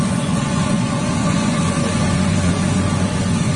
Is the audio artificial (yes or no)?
yes